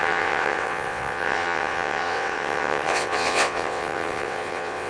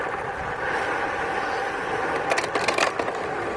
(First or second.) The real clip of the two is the second